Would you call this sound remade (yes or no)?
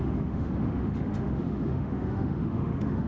yes